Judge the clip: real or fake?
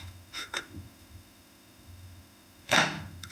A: fake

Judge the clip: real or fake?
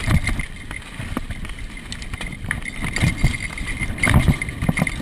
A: real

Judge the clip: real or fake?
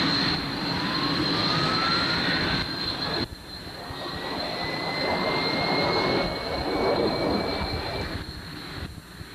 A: real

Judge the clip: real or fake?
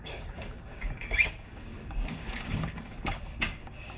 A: fake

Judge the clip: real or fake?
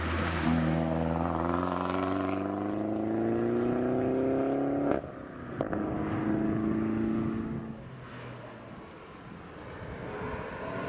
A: real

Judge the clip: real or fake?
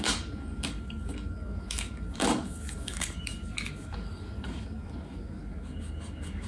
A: fake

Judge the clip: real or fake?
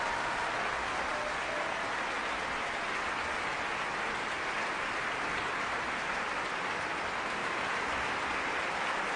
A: real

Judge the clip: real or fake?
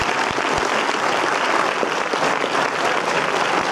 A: real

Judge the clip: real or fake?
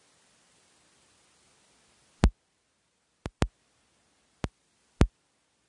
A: real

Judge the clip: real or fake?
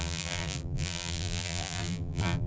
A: fake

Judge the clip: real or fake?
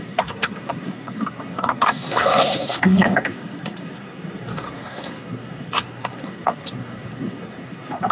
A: fake